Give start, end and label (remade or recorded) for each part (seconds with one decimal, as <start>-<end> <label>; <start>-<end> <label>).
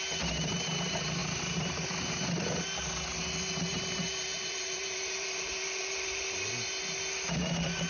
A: 0.0-1.2 recorded; 1.2-1.9 remade; 1.9-3.7 recorded; 3.7-6.5 remade; 6.5-7.9 recorded